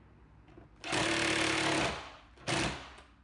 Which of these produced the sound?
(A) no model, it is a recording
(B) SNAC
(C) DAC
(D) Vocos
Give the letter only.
A